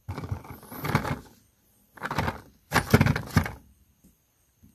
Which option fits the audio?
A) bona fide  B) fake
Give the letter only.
A